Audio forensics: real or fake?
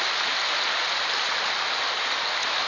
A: real